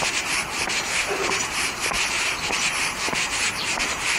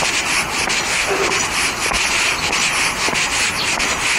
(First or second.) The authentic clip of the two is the second